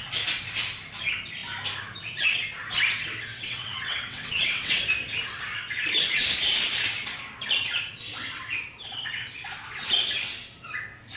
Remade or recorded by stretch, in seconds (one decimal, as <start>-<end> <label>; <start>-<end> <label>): 0.0-3.3 recorded; 3.3-4.8 remade; 4.8-11.2 recorded